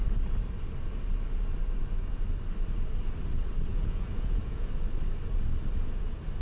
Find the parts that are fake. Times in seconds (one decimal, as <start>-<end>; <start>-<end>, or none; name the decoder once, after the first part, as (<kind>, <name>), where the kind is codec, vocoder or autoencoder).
3.7-4.7 (vocoder, Vocos)